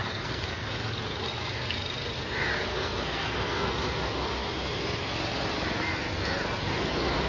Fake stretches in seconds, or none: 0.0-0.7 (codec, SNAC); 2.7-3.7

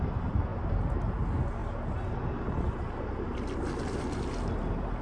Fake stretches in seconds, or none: none